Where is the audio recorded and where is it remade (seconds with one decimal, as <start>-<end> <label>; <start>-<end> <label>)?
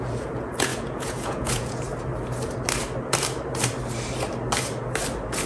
0.0-1.9 remade; 1.9-5.5 recorded